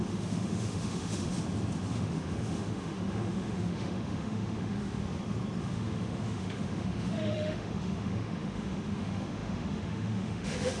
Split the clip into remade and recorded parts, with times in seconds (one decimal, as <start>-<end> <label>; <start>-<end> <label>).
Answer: 0.0-1.3 remade; 1.3-1.9 recorded; 1.9-5.0 remade; 5.0-5.6 recorded; 5.6-10.8 remade